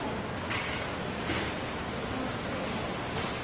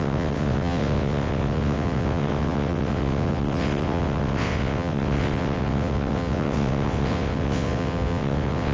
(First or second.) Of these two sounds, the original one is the first